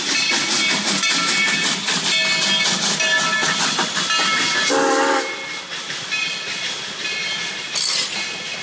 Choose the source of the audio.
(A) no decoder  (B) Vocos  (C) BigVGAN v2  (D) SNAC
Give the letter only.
A